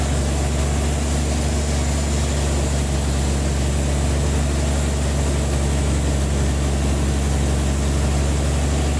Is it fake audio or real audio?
real